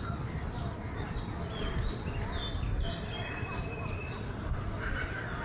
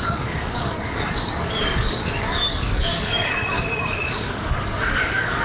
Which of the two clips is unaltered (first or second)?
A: first